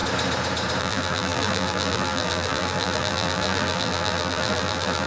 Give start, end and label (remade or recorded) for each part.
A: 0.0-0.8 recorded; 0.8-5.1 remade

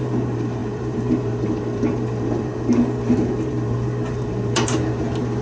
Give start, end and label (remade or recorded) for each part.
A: 0.0-5.4 remade

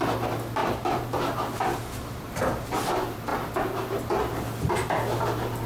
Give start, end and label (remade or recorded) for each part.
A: 0.0-0.6 recorded; 0.6-2.4 remade; 2.4-5.7 recorded

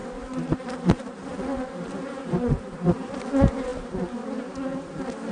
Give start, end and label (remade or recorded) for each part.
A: 0.0-3.2 remade; 3.2-5.3 recorded

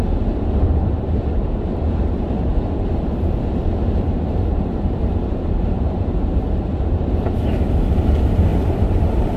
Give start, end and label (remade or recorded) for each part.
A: 0.0-2.5 remade; 2.5-3.7 recorded; 3.7-9.4 remade

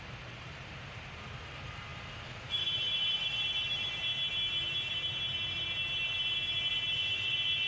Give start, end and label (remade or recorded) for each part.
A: 0.0-4.1 remade; 4.1-7.7 recorded